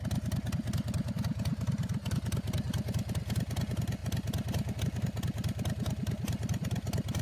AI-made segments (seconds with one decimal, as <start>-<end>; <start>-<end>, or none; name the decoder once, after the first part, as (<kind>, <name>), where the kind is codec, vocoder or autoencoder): none